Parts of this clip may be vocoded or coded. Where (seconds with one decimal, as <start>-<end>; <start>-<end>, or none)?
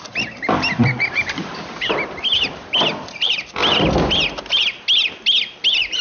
0.8-4.4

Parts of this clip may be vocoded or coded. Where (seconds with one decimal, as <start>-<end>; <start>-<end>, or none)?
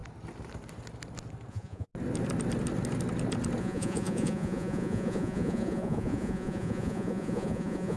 1.5-1.9; 3.6-8.0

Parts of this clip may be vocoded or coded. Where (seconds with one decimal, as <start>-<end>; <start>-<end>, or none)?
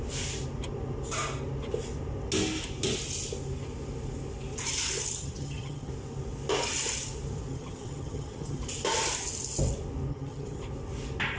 5.2-5.9; 7.5-8.6; 10.1-10.6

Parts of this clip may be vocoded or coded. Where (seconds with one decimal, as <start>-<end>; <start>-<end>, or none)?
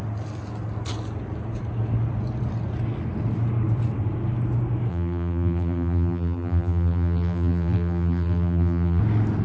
4.9-9.0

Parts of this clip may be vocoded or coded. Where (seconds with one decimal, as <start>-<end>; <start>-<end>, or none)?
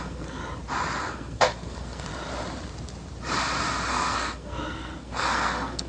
0.0-0.4; 1.0-2.1; 3.9-5.9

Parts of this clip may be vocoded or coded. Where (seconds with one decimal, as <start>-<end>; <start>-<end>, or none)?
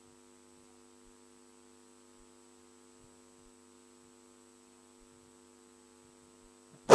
none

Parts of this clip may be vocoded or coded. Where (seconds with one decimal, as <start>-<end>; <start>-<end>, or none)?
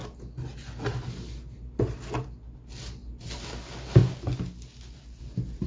none